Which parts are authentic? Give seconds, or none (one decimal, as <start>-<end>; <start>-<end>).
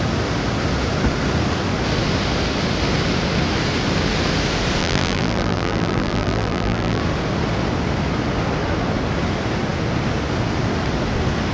0.0-4.8; 7.0-11.5